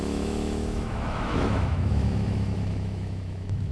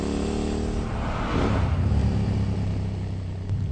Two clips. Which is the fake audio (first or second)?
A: first